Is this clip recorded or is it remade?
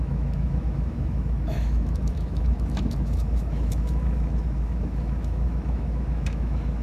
remade